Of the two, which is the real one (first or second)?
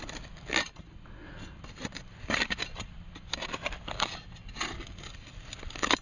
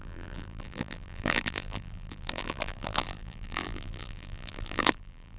first